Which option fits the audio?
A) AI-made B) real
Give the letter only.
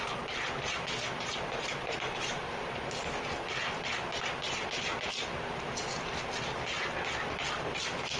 B